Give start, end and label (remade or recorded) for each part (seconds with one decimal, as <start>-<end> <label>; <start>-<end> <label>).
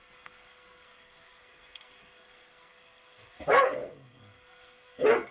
0.0-5.3 remade